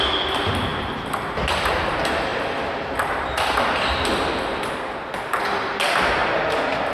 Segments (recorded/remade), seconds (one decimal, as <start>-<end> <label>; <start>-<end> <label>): 0.0-0.7 recorded; 0.7-1.7 remade; 1.7-2.3 recorded; 2.3-4.7 remade; 4.7-6.9 recorded